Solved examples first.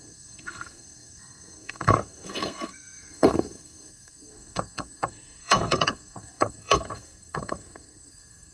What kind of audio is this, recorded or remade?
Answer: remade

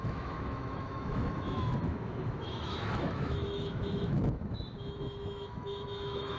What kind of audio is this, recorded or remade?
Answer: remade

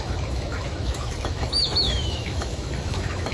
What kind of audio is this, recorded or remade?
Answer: remade